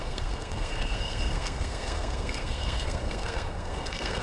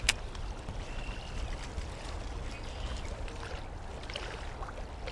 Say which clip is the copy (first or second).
first